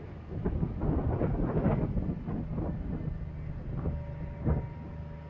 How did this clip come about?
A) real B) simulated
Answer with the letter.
A